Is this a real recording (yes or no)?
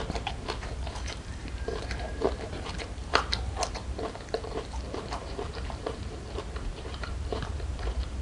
no